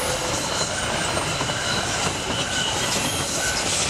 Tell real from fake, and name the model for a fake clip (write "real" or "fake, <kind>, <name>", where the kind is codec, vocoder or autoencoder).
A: real